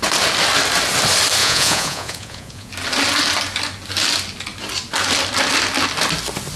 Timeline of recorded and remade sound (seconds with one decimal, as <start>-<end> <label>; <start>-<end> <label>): 0.0-1.4 recorded; 1.4-2.7 remade; 2.7-6.6 recorded